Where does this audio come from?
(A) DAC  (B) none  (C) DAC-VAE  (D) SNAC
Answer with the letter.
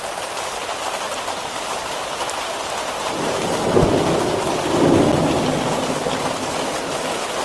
B